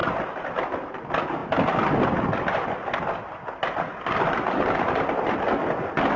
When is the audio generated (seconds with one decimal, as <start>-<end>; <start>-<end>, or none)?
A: none